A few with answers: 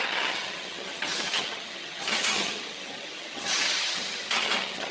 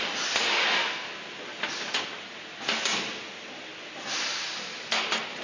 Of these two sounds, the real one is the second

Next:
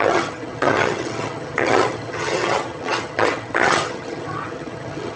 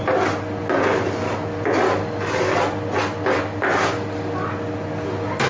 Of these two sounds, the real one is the second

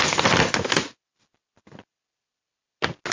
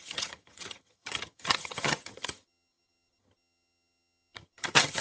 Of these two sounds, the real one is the first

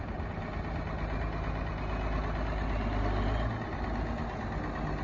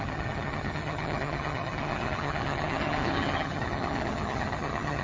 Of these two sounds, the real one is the first